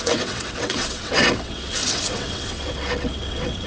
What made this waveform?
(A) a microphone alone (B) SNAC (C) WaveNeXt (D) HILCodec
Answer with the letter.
C